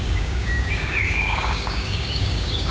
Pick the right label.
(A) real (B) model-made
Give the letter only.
B